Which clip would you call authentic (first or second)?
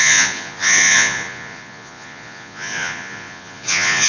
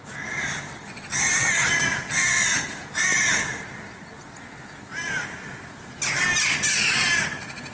second